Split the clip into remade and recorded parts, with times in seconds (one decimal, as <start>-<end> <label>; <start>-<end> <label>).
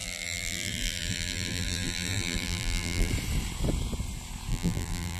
0.0-3.1 remade; 3.1-4.5 recorded; 4.5-5.2 remade